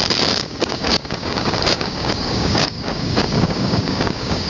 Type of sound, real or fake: fake